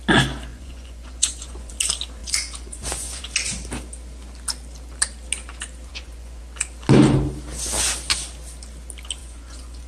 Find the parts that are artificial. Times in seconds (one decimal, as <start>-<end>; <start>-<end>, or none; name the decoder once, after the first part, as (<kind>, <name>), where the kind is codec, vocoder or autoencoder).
0.5-1.7 (vocoder, Vocos); 2.2-3.2; 5.9-6.4; 9.2-9.9